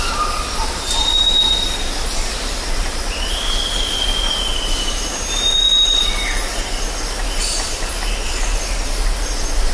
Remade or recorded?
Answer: recorded